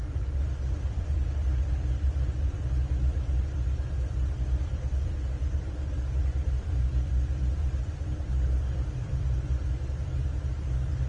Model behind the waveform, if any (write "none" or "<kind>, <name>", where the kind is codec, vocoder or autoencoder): vocoder, BigVGAN v2